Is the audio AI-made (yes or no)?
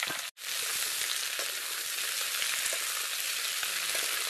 no